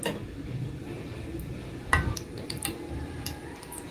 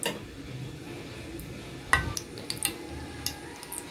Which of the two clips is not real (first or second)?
first